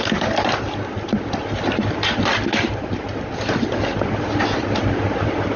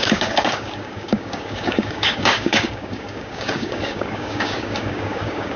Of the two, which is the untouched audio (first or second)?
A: first